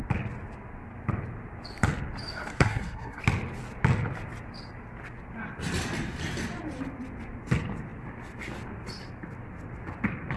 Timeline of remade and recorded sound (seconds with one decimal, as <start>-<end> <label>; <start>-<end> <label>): 0.0-2.5 recorded; 2.5-3.2 remade; 3.2-10.4 recorded